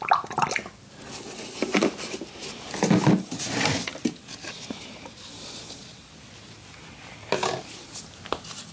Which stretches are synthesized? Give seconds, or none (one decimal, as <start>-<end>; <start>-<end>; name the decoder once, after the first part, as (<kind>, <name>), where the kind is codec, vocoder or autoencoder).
none

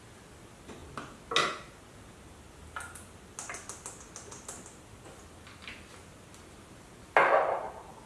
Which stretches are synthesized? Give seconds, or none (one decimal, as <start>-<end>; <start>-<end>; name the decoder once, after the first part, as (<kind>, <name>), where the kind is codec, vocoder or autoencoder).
none

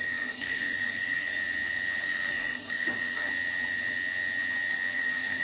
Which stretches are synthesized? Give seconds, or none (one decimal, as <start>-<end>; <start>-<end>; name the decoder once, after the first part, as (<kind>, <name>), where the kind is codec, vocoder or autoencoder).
0.0-1.3 (codec, SNAC); 2.0-3.3; 4.7-5.4

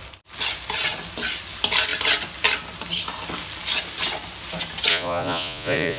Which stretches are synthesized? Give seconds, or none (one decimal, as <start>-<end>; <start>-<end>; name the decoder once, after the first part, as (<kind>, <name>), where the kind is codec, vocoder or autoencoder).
4.9-6.0 (vocoder, Vocos)

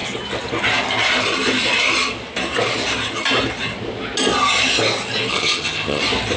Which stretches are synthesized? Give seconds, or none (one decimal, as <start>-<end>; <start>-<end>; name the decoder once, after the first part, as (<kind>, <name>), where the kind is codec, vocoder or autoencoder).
5.3-6.0 (vocoder, HiFi-GAN)

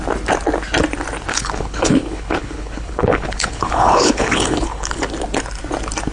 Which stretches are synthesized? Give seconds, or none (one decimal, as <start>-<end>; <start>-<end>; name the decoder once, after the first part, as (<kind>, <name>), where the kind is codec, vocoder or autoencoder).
1.3-5.0 (codec, HILCodec)